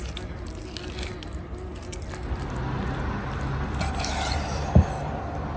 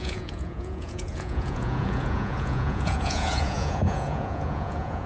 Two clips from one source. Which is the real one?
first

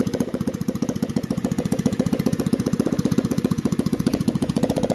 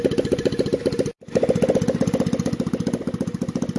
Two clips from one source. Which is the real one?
second